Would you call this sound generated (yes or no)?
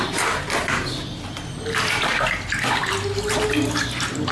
no